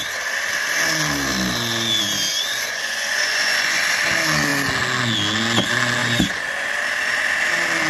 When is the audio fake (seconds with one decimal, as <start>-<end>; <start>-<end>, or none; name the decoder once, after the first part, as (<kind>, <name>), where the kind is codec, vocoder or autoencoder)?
2.3-3.8 (vocoder, Vocos); 6.0-6.7